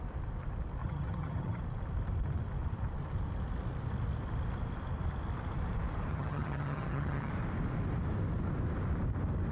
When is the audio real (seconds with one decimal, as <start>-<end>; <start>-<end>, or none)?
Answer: 0.0-0.8; 1.6-6.1; 7.3-9.5